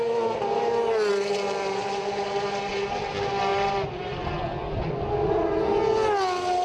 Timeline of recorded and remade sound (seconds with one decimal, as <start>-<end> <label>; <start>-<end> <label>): 0.0-1.1 recorded; 1.1-2.7 remade; 2.7-3.5 recorded; 3.5-4.3 remade; 4.3-6.6 recorded